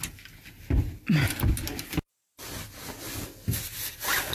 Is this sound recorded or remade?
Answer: recorded